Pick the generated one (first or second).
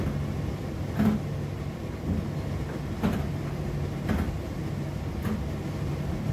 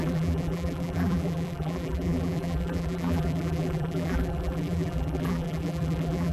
second